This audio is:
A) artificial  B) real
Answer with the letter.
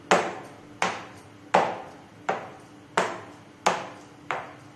B